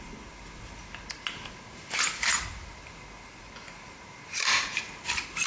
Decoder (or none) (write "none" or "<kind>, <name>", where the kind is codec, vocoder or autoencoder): none